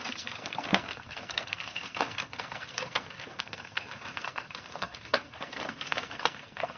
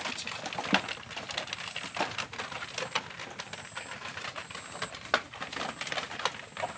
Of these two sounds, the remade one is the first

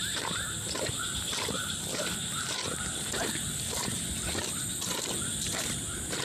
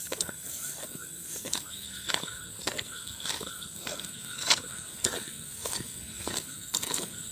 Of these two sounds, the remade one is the second